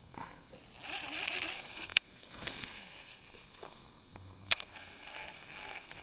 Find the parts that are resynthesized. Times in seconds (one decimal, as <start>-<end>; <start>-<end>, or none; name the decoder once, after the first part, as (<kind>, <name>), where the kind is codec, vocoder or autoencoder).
0.0-0.5 (codec, SNAC); 1.5-6.0

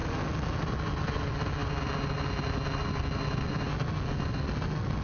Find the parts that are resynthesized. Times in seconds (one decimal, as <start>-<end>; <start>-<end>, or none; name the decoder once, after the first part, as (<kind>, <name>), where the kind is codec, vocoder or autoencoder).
none

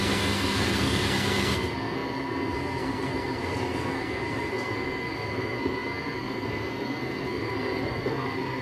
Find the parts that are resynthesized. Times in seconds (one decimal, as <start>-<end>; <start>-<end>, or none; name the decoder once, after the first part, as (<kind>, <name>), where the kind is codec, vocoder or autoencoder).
0.0-8.6 (codec, SNAC)

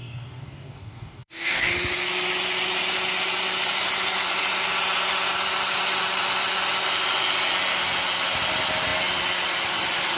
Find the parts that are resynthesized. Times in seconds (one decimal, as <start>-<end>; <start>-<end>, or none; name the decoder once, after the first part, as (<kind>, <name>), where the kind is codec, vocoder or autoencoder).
0.0-1.7 (codec, DAC)

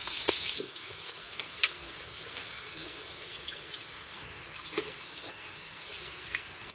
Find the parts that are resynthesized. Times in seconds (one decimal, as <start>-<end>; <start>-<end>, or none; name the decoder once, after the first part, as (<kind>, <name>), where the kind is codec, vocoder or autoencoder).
0.0-6.7 (codec, SNAC)

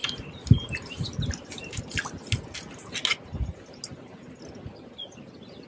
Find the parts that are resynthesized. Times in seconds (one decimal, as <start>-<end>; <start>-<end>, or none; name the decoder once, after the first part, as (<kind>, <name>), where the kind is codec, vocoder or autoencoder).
none

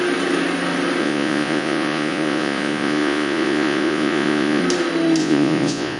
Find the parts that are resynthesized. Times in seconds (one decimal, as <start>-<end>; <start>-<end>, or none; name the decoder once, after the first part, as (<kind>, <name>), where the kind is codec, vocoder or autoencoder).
1.0-4.6 (vocoder, Vocos); 5.2-6.0

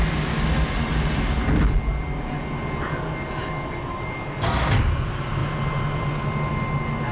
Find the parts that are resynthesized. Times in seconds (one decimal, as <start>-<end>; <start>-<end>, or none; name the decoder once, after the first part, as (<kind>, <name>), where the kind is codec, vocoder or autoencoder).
none